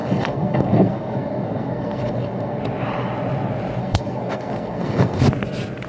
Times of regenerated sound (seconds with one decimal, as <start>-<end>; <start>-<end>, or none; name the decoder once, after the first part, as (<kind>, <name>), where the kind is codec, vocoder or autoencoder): 0.0-2.6 (codec, SNAC); 3.8-5.2